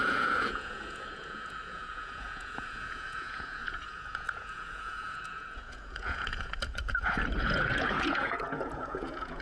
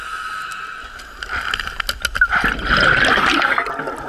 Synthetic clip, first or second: first